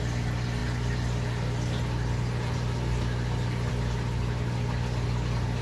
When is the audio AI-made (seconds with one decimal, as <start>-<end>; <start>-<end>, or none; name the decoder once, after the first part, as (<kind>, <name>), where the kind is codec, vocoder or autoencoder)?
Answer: none